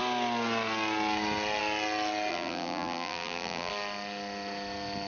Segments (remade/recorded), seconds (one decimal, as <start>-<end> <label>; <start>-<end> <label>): 0.0-2.3 recorded; 2.3-3.7 remade; 3.7-5.1 recorded